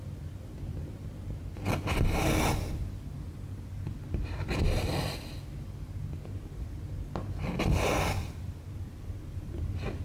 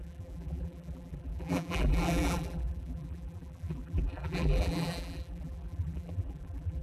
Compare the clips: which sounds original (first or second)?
first